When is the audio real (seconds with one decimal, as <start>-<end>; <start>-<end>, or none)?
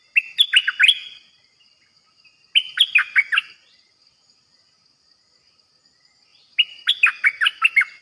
0.0-8.0